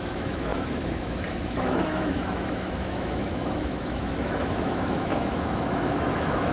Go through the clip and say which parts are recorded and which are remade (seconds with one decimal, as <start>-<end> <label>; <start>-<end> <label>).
0.0-6.5 remade